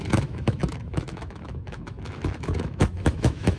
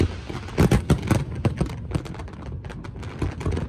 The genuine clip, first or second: second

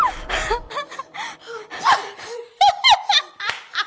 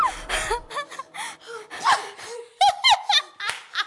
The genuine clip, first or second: second